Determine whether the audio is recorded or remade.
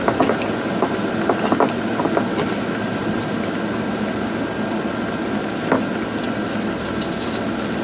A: recorded